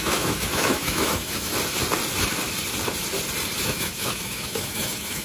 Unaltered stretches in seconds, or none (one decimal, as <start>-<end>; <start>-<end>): 1.5-3.6